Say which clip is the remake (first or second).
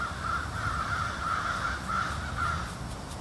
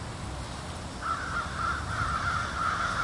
first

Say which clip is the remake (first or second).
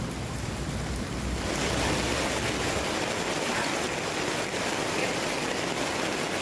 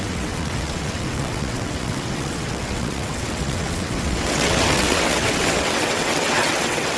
second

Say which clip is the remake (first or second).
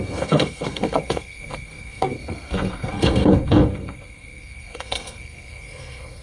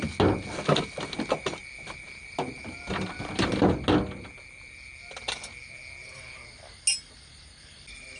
first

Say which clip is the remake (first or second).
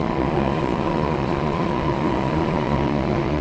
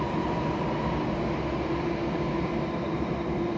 first